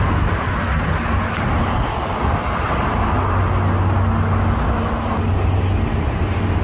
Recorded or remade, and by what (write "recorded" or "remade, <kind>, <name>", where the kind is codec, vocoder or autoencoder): recorded